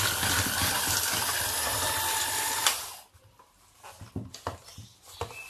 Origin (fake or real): real